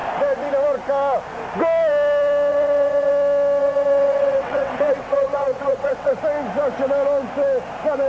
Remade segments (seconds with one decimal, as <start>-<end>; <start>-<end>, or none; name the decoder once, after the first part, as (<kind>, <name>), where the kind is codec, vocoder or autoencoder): 2.5-3.1 (vocoder, WaveNeXt); 3.6-6.1